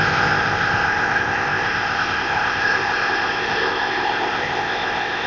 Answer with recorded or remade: remade